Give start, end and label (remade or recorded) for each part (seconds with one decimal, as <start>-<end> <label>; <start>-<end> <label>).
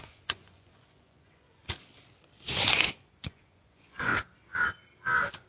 0.0-1.6 remade; 1.6-2.7 recorded; 2.7-4.1 remade; 4.1-5.5 recorded